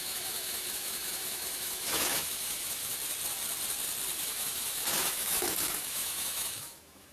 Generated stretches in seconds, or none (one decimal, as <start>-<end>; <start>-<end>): 0.0-2.9; 4.2-7.1